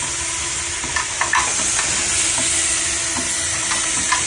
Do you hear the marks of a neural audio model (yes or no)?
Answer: no